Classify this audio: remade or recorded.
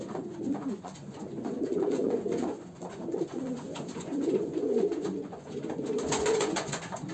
remade